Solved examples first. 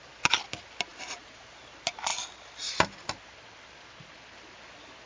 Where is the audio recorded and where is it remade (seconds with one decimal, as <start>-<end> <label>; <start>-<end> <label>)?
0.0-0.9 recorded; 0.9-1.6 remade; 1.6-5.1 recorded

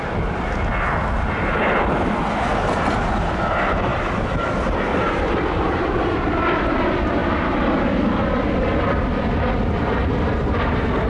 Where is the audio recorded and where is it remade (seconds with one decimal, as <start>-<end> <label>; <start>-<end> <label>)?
0.0-3.9 recorded; 3.9-4.5 remade; 4.5-4.9 recorded; 4.9-6.8 remade; 6.8-11.1 recorded

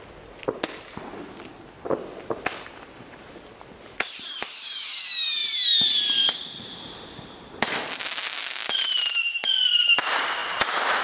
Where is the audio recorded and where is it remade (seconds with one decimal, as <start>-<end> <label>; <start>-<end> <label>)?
0.0-11.0 recorded